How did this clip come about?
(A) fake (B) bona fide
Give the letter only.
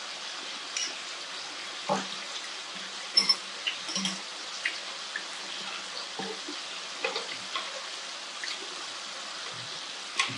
B